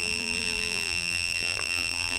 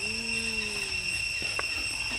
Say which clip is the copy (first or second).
first